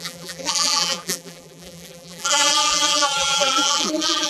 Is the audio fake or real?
fake